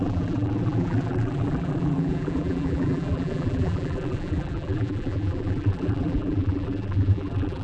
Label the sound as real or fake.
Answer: fake